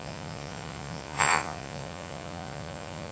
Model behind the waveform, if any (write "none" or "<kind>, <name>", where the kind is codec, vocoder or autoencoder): vocoder, Vocos